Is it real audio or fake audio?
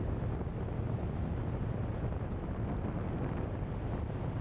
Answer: real